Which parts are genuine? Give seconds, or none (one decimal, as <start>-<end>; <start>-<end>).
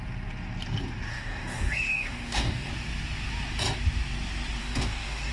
0.0-1.1; 2.7-4.6